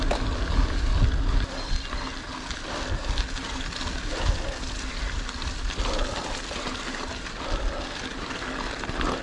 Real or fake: real